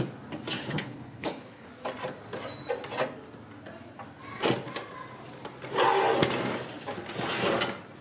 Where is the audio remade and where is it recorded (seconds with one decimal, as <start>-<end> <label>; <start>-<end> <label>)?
0.0-0.6 recorded; 0.6-1.7 remade; 1.7-8.0 recorded